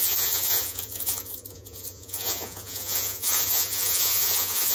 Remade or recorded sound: remade